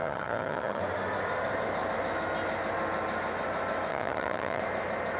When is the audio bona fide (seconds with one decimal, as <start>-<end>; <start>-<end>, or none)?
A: 0.8-3.9; 4.6-5.2